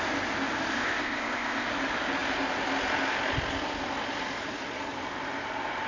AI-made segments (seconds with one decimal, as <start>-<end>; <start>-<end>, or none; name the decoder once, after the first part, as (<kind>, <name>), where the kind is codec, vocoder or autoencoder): 0.7-1.7 (codec, ZipCodec)